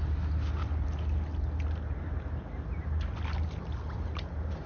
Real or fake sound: real